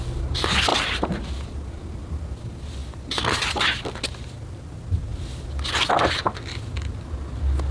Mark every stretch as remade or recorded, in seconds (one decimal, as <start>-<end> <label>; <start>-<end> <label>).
0.0-0.7 recorded; 0.7-2.1 remade; 2.1-7.7 recorded